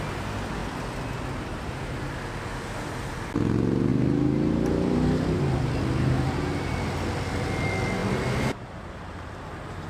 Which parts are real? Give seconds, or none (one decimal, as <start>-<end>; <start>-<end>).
0.0-9.9